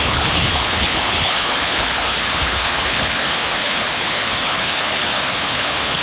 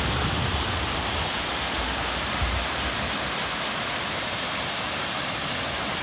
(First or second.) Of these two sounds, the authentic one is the second